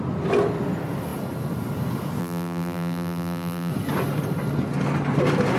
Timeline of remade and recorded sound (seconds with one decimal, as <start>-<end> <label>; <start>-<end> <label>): 0.0-2.2 recorded; 2.2-3.7 remade; 3.7-5.6 recorded